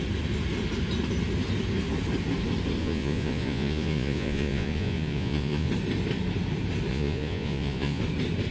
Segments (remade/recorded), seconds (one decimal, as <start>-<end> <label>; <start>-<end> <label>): 0.0-2.8 recorded; 2.8-5.7 remade; 5.7-6.9 recorded; 6.9-8.0 remade; 8.0-8.5 recorded